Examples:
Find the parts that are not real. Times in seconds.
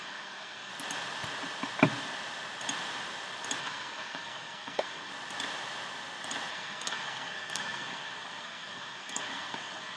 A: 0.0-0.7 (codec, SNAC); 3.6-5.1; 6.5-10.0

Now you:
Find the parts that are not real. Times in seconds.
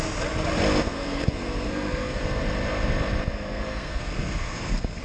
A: 0.8-2.2 (codec, SNAC); 3.3-5.0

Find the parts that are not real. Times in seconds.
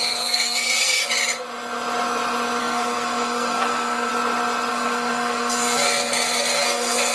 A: 0.0-1.0 (codec, SNAC); 2.6-4.1; 4.7-7.1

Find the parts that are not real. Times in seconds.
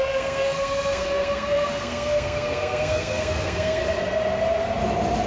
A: 0.0-3.8 (codec, SNAC)